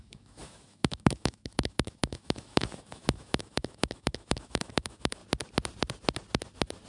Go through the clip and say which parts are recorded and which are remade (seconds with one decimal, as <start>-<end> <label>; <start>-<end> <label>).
0.0-5.2 remade; 5.2-6.9 recorded